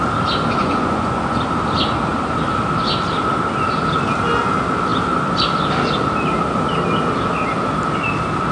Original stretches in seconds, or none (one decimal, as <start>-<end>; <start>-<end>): 0.0-0.6; 1.4-8.5